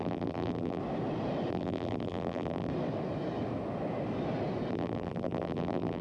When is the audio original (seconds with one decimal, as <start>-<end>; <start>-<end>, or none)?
0.8-1.5; 2.7-4.7